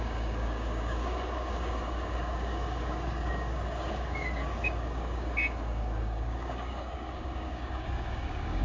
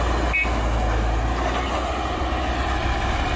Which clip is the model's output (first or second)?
first